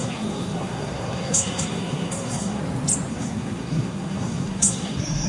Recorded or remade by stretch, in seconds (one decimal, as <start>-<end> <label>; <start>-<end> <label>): 0.0-2.6 remade; 2.6-3.1 recorded; 3.1-5.3 remade